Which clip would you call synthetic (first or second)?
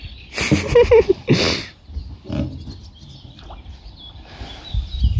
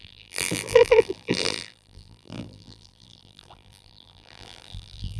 second